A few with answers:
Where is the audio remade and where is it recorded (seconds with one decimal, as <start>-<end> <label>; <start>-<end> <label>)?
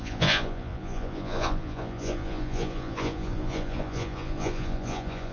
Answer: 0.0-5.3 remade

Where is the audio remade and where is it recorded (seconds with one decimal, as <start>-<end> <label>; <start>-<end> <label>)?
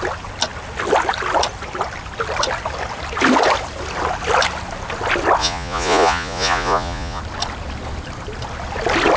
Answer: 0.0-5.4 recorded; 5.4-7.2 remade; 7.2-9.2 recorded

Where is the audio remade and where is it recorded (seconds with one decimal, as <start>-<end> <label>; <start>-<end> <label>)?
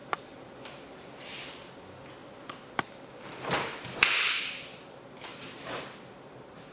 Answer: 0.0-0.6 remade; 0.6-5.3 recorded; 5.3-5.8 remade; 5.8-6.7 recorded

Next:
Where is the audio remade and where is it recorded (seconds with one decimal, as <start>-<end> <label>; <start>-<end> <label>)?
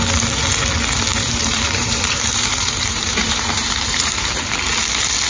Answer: 0.0-1.1 recorded; 1.1-4.3 remade; 4.3-5.3 recorded